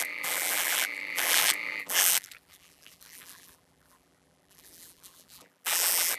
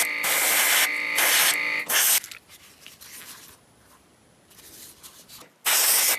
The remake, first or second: first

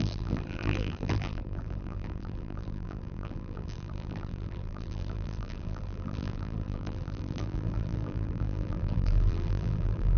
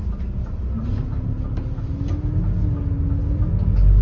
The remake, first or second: first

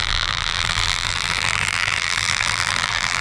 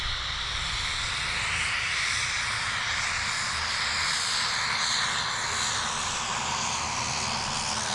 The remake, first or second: first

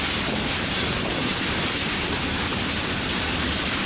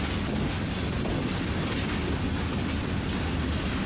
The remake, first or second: first